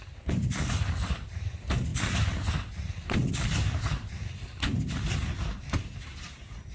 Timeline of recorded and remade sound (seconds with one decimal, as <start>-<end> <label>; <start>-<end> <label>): 0.0-6.7 recorded

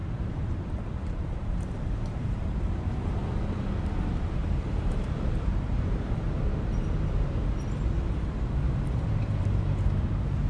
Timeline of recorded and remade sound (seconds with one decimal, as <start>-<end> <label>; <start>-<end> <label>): 0.0-3.2 remade; 3.2-4.4 recorded; 4.4-6.5 remade; 6.5-8.4 recorded; 8.4-10.5 remade

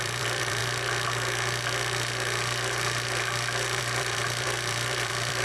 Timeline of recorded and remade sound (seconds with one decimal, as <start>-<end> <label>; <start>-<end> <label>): 0.0-0.6 remade; 0.6-3.8 recorded; 3.8-5.4 remade

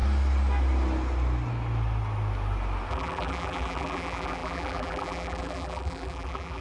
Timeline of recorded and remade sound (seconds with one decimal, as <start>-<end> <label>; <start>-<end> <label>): 0.0-2.9 recorded; 2.9-6.6 remade

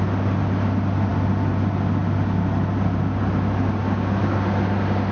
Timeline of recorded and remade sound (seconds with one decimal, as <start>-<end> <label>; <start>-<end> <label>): 0.0-5.1 recorded

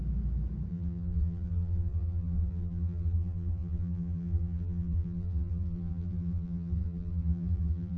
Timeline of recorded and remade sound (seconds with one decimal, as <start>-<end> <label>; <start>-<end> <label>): 0.0-0.7 recorded; 0.7-8.0 remade